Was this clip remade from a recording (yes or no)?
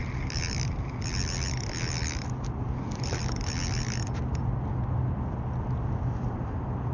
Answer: no